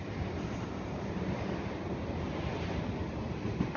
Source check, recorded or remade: recorded